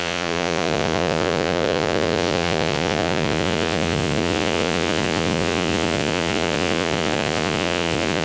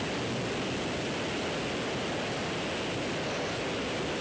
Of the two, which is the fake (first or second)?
first